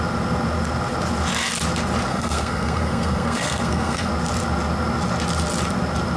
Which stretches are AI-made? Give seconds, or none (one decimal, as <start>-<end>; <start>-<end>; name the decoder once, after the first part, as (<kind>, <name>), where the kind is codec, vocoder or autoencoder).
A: 2.1-4.1 (codec, SNAC)